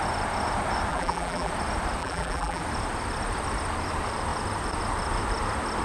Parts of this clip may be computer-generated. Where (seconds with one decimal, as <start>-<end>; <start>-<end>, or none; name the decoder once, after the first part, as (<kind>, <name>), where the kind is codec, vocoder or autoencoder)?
0.9-1.5 (vocoder, BigVGAN v2); 2.0-2.6